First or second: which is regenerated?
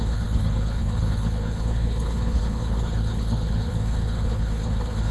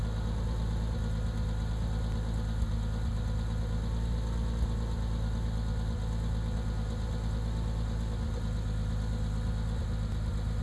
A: first